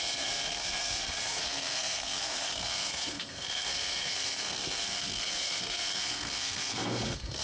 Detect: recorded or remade remade